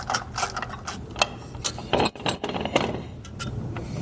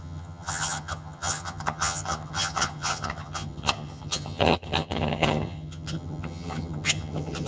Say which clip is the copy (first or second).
second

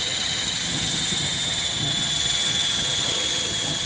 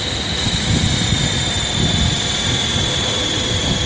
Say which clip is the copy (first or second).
first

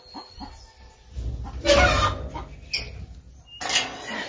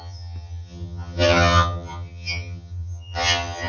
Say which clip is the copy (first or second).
second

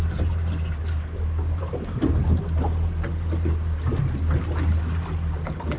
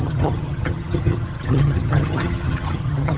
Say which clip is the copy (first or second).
second